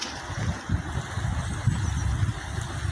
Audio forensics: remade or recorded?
recorded